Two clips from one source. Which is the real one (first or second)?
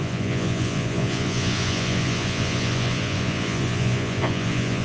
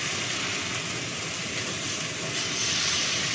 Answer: second